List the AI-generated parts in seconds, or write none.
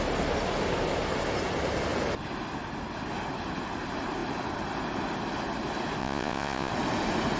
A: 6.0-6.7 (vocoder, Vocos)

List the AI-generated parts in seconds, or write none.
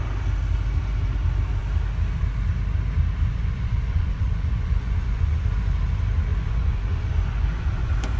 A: 3.3-5.8 (vocoder, Vocos); 6.3-8.2